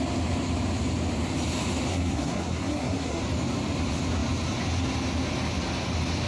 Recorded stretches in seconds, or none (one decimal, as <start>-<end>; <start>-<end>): 0.0-1.9; 3.2-6.3